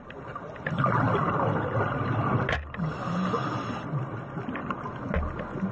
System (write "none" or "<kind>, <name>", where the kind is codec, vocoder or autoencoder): none